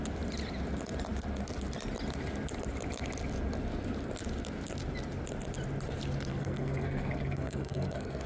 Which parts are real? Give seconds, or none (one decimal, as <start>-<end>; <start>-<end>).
0.0-6.3